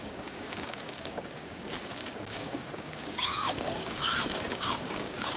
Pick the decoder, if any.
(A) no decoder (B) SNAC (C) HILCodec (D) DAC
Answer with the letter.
D